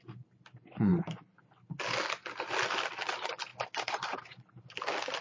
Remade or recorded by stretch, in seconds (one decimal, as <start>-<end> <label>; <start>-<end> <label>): 0.0-0.9 recorded; 0.9-1.8 remade; 1.8-3.5 recorded; 3.5-4.6 remade; 4.6-5.2 recorded